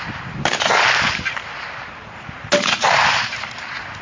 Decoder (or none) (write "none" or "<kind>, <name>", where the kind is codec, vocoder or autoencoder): none